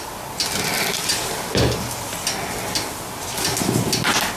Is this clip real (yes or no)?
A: yes